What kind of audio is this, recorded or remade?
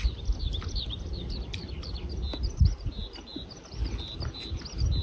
recorded